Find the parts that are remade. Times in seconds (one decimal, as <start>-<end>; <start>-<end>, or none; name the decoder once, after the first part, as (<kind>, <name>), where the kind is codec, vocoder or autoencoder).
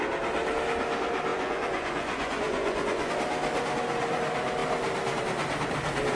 1.3-3.1 (vocoder, Vocos)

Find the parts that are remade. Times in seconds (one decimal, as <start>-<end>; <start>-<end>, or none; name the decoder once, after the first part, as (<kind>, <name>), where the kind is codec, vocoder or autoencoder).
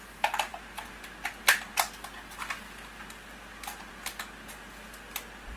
none